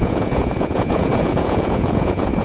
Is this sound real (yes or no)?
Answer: no